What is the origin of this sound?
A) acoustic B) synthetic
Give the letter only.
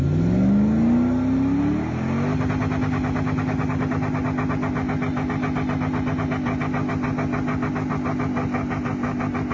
A